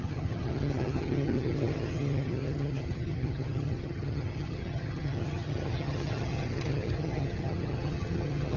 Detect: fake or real fake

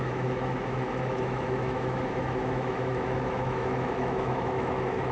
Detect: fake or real fake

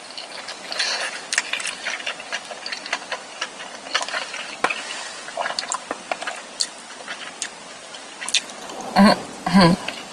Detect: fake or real real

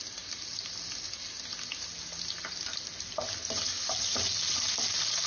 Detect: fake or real real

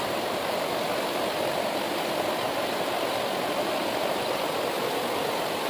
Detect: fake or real real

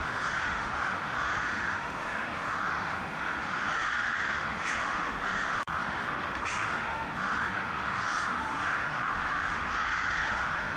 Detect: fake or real fake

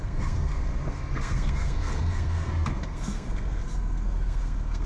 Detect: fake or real fake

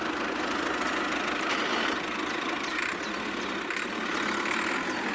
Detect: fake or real real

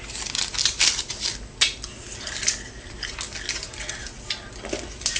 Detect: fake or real real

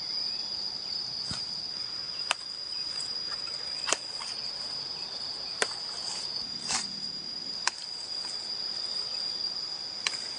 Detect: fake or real fake